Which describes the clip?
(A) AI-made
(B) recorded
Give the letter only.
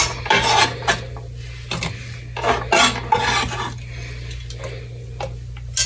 B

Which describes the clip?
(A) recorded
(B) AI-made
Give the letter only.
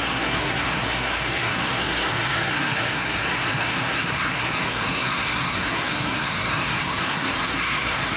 B